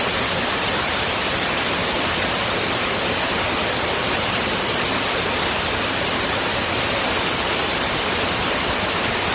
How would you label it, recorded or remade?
remade